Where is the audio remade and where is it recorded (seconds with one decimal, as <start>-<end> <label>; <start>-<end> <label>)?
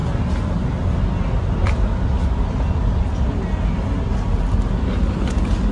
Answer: 0.0-5.7 recorded